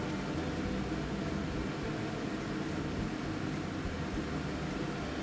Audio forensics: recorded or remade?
recorded